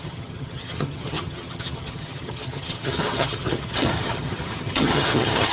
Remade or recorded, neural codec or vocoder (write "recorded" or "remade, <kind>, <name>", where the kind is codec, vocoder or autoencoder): remade, vocoder, HiFi-GAN